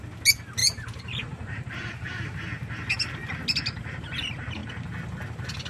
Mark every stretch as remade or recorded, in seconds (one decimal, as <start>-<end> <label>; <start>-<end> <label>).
0.0-0.6 recorded; 0.6-2.3 remade; 2.3-5.7 recorded